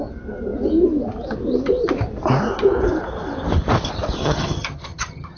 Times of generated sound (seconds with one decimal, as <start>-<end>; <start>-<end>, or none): 4.2-5.4